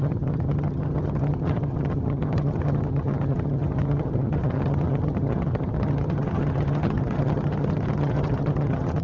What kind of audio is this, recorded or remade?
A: remade